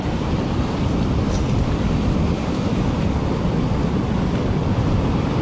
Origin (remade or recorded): remade